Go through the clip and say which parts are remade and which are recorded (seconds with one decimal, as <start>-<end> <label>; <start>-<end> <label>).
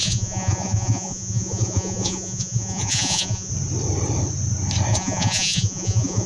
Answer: 0.0-3.5 remade; 3.5-4.9 recorded; 4.9-6.3 remade